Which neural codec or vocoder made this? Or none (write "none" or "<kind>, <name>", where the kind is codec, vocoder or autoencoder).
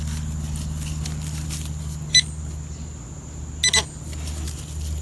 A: none